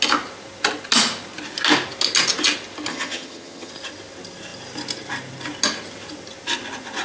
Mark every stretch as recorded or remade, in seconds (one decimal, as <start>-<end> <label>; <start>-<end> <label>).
0.0-2.9 recorded; 2.9-3.7 remade; 3.7-7.0 recorded